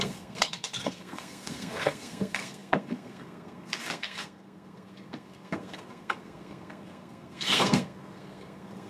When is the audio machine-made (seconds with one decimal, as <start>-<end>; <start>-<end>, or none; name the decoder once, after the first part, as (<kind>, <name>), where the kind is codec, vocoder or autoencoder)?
0.0-8.9 (codec, SNAC)